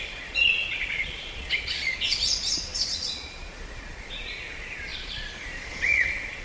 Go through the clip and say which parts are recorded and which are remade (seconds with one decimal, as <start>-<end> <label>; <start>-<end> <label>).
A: 0.0-6.4 remade